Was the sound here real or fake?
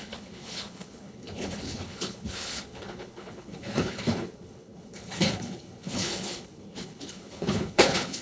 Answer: fake